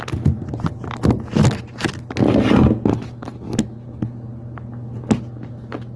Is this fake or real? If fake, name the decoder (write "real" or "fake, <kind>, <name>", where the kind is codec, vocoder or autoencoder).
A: real